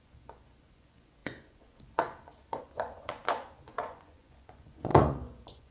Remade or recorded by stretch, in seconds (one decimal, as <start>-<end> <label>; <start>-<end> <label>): 0.0-5.7 remade